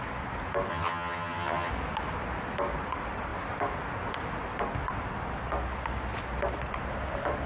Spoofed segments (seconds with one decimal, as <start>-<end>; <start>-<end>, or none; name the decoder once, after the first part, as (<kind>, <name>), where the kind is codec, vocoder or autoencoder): 0.7-1.7 (vocoder, HiFi-GAN)